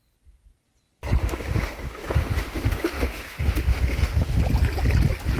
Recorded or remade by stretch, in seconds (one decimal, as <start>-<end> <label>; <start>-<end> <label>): 0.0-1.2 recorded; 1.2-4.4 remade; 4.4-5.4 recorded